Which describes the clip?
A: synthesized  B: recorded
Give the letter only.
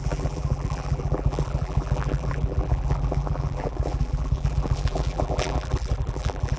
A